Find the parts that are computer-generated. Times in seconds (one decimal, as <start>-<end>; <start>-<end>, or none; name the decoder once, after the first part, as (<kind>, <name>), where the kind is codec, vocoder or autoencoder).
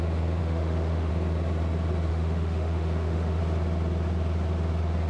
0.4-1.1 (autoencoder, DAC-VAE); 2.1-3.4